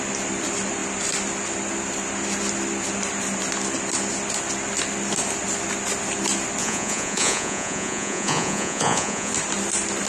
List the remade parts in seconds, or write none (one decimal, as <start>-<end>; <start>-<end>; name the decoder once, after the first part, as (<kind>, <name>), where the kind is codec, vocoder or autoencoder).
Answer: 6.6-9.3 (vocoder, Vocos)